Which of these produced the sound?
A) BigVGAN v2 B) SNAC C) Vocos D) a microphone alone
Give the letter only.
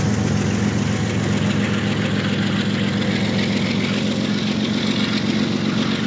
D